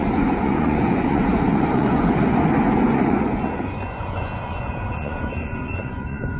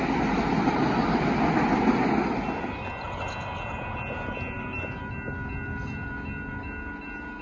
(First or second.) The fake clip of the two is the first